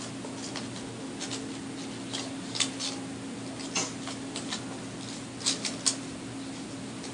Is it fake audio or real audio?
real